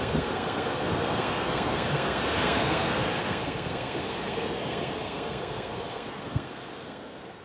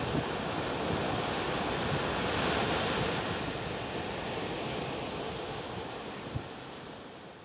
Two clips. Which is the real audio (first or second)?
second